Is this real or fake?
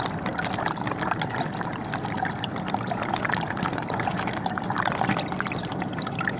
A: real